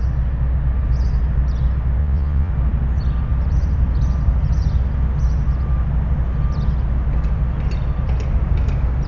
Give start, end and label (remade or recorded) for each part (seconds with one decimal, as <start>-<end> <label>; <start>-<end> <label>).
0.0-2.0 recorded; 2.0-2.5 remade; 2.5-9.1 recorded